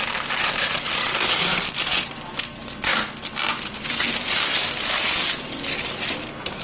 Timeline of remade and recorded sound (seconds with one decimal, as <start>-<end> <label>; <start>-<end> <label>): 0.0-6.6 recorded